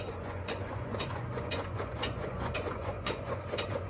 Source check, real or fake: fake